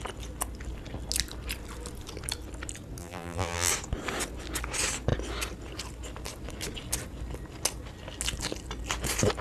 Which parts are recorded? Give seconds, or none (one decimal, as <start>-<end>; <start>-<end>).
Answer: 0.0-3.0; 3.7-9.4